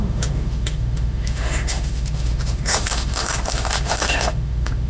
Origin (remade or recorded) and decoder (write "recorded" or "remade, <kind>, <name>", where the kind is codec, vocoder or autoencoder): remade, autoencoder, DAC-VAE